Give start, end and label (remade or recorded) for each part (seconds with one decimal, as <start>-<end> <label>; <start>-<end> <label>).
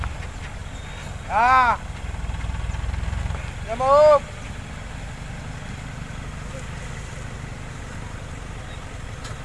0.0-9.4 recorded